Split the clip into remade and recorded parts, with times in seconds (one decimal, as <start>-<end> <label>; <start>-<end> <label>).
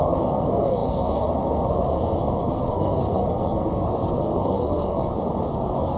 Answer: 0.0-6.0 remade